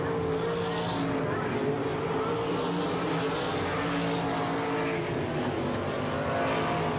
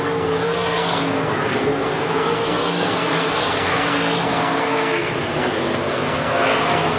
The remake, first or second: second